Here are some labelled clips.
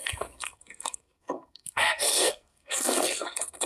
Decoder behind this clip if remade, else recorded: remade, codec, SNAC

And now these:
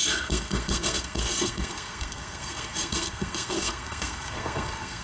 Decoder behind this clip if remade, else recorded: remade, codec, SNAC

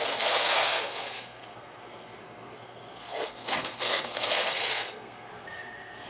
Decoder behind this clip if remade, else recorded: remade, codec, SNAC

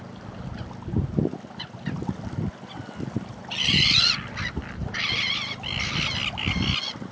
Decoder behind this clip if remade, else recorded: recorded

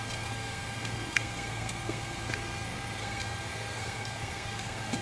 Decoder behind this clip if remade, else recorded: remade, codec, SNAC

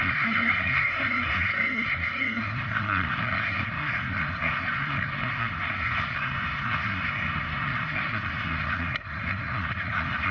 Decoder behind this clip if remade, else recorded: remade, codec, SNAC